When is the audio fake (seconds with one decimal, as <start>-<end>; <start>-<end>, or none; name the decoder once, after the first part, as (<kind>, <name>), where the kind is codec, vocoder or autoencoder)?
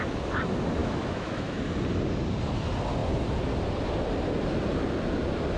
0.8-1.6 (autoencoder, DAC-VAE)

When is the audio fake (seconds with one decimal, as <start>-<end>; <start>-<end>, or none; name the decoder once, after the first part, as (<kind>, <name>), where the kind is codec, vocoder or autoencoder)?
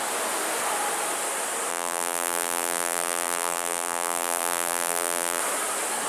1.7-5.4 (vocoder, BigVGAN v2)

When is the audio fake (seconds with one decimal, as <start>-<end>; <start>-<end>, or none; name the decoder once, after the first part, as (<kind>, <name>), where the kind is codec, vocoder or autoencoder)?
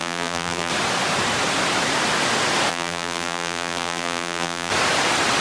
0.0-0.7 (vocoder, BigVGAN v2); 2.7-4.7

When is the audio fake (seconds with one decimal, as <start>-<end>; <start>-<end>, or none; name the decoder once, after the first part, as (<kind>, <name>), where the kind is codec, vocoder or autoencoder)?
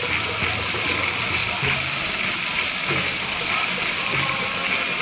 1.4-4.4 (vocoder, BigVGAN v2)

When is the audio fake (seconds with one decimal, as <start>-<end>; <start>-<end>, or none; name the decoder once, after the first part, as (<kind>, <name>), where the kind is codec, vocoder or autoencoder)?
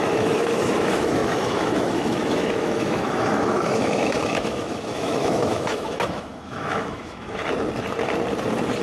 0.0-7.4 (autoencoder, DAC-VAE)